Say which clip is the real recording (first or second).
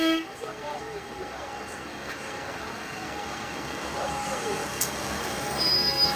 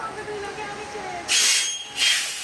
second